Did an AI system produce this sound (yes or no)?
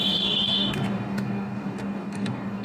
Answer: yes